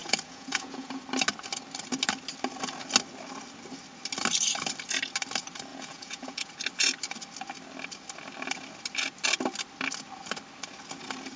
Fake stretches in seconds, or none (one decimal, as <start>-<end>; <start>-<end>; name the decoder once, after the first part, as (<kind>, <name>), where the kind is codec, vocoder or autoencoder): 0.0-1.0 (vocoder, Vocos); 5.7-6.5